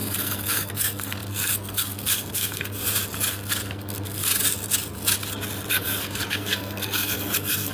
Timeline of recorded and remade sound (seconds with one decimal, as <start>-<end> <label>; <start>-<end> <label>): 0.0-2.8 remade; 2.8-3.3 recorded; 3.3-4.3 remade; 4.3-5.7 recorded; 5.7-7.7 remade